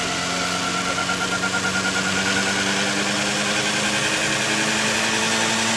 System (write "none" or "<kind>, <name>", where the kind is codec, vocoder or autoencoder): none